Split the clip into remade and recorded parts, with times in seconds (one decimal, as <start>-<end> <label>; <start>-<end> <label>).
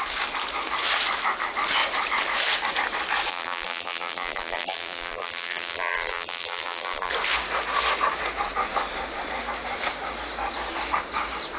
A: 0.0-3.3 recorded; 3.3-7.1 remade; 7.1-11.6 recorded